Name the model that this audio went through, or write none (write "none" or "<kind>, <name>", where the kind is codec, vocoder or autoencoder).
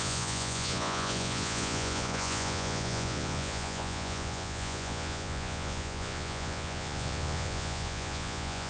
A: vocoder, Vocos